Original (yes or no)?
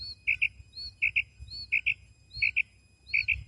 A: yes